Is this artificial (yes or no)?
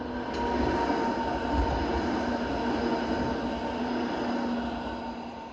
no